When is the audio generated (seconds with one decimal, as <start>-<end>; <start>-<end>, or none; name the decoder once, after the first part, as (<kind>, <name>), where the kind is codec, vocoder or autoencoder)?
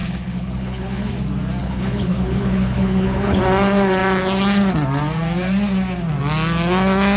0.0-1.1 (codec, HILCodec); 1.6-3.4